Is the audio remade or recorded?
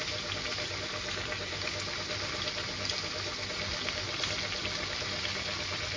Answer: recorded